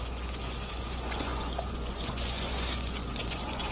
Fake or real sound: fake